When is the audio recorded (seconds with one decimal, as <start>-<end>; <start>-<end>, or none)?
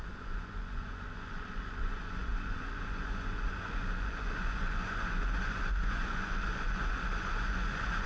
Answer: none